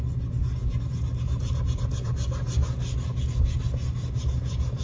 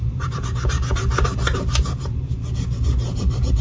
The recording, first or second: first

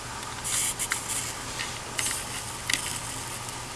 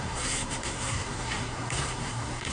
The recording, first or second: first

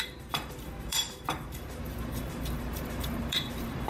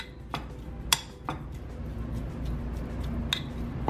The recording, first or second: second